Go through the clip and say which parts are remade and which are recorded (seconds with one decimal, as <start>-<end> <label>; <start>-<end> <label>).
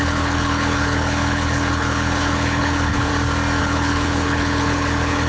0.0-3.1 remade; 3.1-3.6 recorded; 3.6-5.3 remade